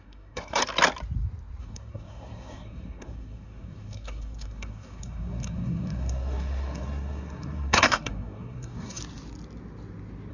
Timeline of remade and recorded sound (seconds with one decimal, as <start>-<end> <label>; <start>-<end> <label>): 0.0-0.6 remade; 0.6-1.6 recorded; 1.6-9.0 remade; 9.0-10.3 recorded